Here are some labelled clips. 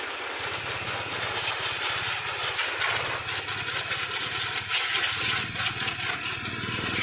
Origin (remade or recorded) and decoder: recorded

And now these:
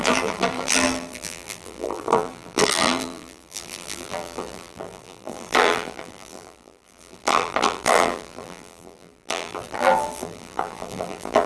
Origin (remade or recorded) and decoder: remade, vocoder, BigVGAN v2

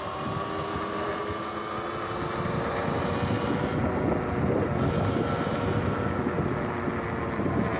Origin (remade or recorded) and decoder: recorded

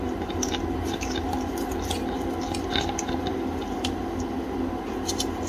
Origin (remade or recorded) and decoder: recorded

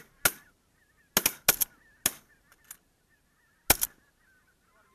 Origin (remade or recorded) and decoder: recorded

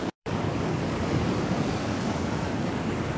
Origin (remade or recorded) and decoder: remade, codec, DAC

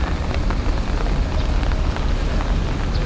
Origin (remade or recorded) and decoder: recorded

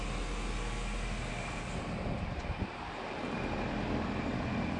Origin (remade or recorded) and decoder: recorded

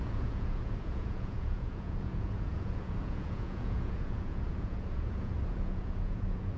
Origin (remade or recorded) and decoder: remade, vocoder, Vocos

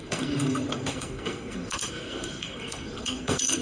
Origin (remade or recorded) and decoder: remade, codec, SNAC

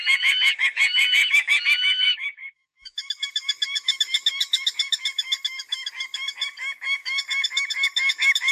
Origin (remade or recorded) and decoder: remade, codec, DAC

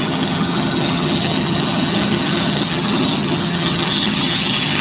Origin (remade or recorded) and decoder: remade, vocoder, HiFi-GAN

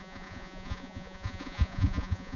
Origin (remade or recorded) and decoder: remade, vocoder, Vocos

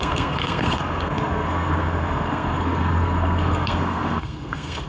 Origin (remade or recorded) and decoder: remade, codec, SNAC